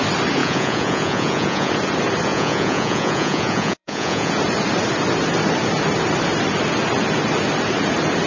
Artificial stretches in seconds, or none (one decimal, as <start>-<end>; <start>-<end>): 0.4-1.7; 2.3-4.3